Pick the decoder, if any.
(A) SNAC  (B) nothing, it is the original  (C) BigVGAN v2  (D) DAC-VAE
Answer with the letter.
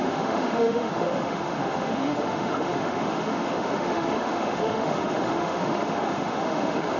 D